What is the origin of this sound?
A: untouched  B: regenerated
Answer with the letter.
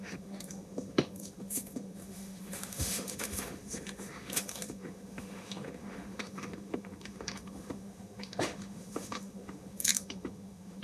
B